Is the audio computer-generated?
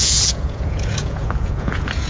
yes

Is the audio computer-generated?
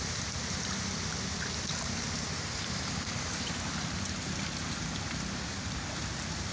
no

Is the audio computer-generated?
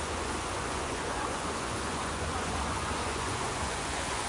yes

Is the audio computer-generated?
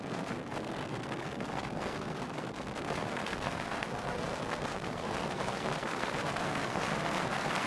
yes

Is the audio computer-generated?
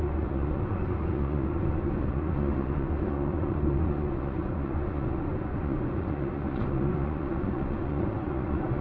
yes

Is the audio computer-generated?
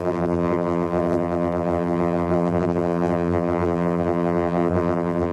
yes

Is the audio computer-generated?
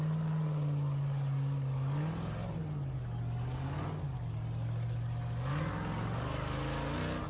no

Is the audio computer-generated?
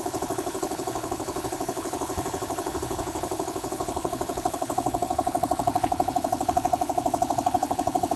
yes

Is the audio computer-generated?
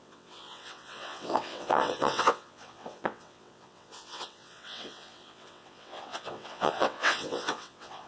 yes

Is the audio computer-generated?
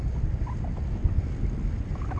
no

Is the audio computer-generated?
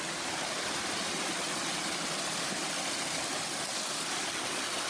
no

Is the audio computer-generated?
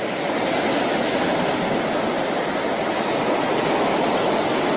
no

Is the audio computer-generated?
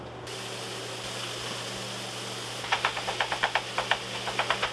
no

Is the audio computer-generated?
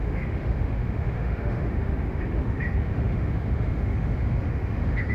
yes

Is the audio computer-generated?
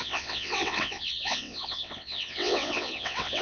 yes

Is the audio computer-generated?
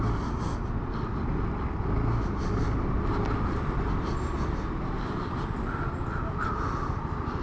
no